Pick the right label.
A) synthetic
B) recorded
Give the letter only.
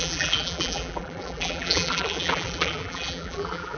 A